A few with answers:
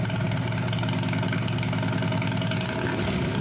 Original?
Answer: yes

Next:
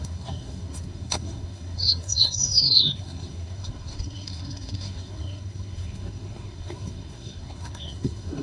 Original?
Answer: no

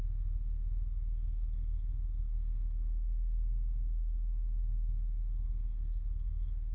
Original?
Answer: no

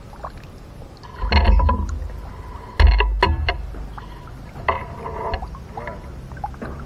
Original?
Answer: yes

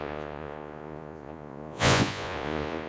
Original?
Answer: no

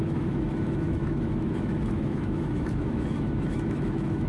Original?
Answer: no